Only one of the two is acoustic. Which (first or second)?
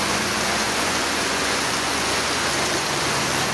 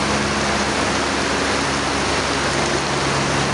second